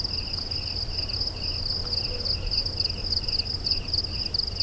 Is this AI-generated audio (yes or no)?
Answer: no